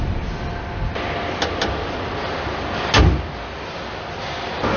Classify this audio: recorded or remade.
recorded